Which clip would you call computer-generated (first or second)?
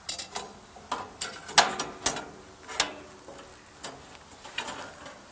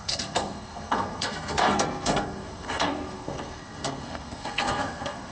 second